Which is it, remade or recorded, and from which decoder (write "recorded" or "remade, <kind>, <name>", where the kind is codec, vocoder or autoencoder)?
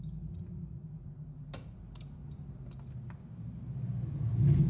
recorded